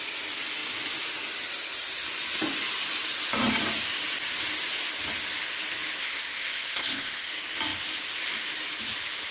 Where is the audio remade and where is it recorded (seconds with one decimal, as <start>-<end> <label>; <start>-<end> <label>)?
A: 0.0-6.0 recorded; 6.0-7.3 remade; 7.3-9.3 recorded